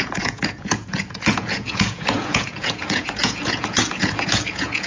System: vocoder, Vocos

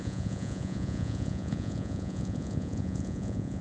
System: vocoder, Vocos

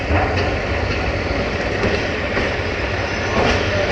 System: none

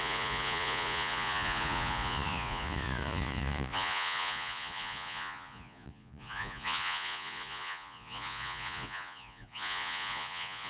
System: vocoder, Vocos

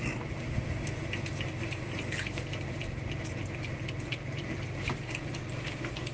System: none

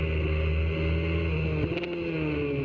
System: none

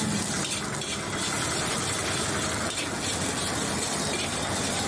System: none